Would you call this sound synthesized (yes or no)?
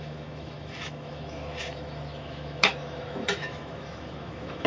yes